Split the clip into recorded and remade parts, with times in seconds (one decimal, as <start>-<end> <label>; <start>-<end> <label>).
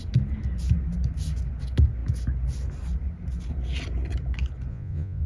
0.0-4.7 recorded; 4.7-5.3 remade